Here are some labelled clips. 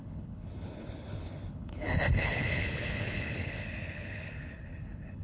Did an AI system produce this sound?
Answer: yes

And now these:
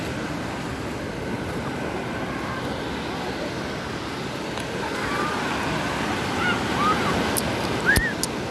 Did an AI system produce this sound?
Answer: no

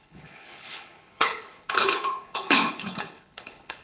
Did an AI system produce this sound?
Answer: yes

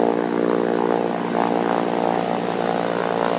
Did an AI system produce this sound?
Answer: no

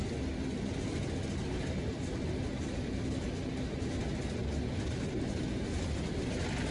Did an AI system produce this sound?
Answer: no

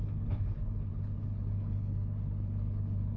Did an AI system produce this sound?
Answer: yes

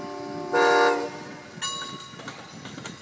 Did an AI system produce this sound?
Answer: no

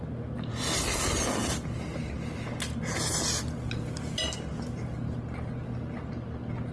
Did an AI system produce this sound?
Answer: no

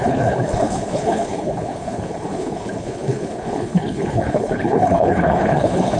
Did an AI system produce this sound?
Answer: yes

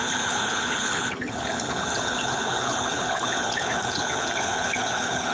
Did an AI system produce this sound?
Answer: yes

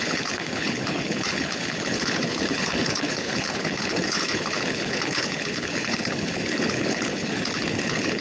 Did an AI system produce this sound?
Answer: yes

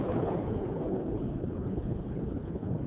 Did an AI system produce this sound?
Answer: yes